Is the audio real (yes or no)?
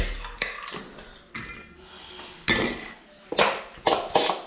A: yes